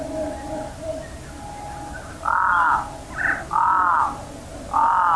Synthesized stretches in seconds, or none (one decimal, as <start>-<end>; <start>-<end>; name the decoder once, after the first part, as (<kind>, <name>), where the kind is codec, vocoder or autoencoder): none